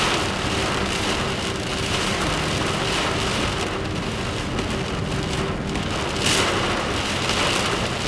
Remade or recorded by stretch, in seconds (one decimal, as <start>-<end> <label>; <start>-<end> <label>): 0.0-8.1 recorded